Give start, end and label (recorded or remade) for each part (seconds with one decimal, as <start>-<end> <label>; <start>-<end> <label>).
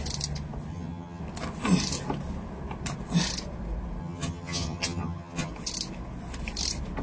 0.0-0.7 recorded; 0.7-1.2 remade; 1.2-4.0 recorded; 4.0-5.5 remade; 5.5-7.0 recorded